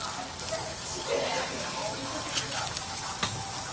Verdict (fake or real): real